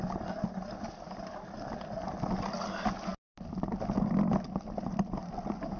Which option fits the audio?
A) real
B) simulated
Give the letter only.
A